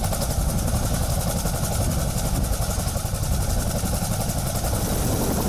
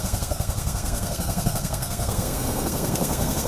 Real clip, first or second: first